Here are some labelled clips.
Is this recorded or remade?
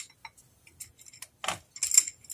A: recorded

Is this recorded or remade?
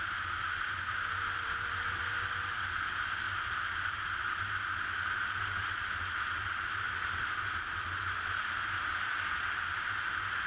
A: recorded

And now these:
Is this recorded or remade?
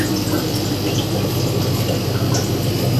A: recorded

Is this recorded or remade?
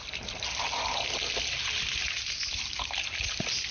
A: recorded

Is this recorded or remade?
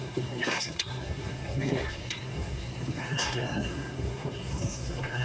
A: remade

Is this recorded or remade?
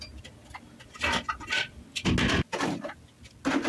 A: recorded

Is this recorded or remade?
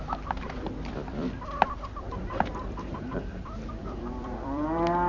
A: remade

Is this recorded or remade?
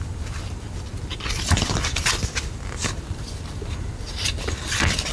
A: remade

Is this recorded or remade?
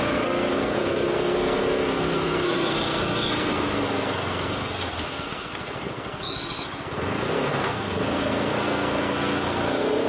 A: remade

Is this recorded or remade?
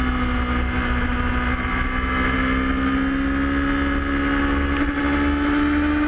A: recorded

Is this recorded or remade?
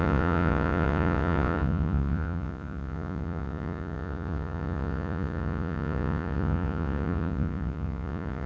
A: remade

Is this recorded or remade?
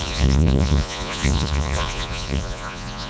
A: remade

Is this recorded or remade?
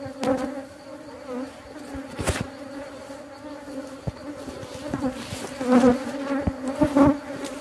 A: recorded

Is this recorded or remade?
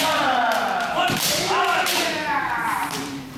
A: remade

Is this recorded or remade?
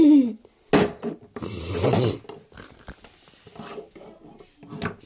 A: recorded